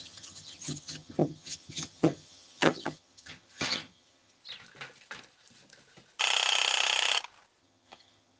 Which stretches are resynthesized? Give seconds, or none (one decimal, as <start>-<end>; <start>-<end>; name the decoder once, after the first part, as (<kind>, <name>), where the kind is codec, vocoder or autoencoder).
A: 0.0-4.4 (vocoder, HiFi-GAN); 7.6-8.4